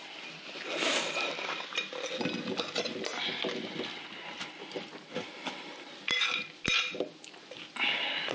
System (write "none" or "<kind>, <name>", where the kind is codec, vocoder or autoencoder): none